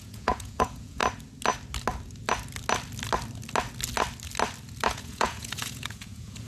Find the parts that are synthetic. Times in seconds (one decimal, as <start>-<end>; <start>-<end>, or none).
0.0-1.0; 4.9-6.5